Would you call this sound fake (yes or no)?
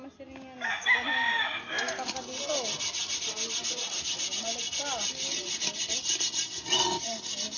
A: no